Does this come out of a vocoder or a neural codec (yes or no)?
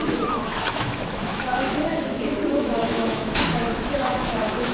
yes